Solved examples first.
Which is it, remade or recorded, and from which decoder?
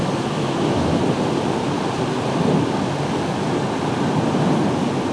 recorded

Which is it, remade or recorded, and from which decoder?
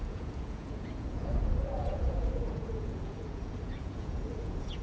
remade, vocoder, Vocos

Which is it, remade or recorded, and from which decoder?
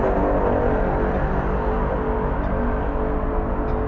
recorded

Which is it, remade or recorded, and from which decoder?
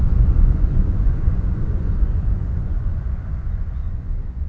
remade, vocoder, Vocos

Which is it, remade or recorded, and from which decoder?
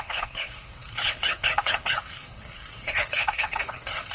remade, codec, HILCodec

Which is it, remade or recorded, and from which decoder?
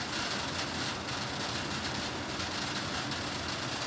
recorded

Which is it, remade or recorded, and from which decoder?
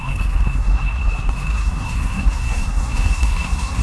remade, codec, SNAC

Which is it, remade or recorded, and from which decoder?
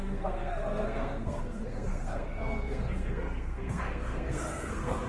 remade, codec, SNAC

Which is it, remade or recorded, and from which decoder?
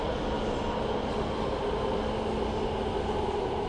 recorded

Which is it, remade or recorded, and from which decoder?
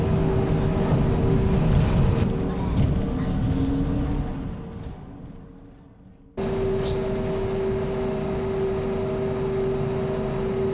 recorded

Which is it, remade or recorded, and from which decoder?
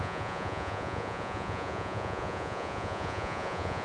remade, vocoder, Vocos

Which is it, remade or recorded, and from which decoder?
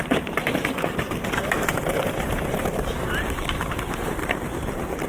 remade, vocoder, BigVGAN v2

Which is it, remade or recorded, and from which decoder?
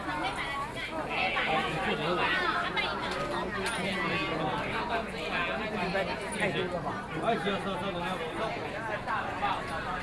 recorded